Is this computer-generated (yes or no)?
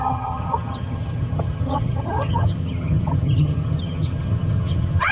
yes